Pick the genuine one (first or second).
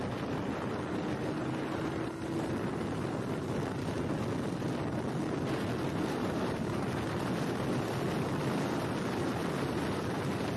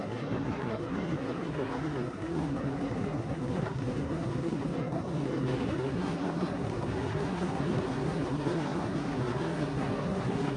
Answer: first